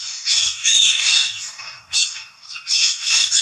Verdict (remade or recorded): remade